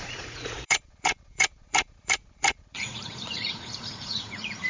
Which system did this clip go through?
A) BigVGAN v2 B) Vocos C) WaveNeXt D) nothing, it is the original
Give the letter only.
B